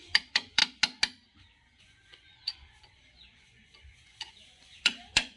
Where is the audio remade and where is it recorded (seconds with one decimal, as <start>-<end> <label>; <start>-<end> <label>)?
0.0-0.6 remade; 0.6-1.8 recorded; 1.8-5.4 remade